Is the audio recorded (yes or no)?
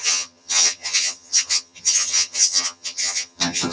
no